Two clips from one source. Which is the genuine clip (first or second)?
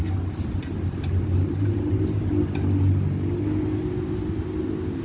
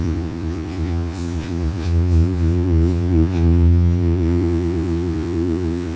first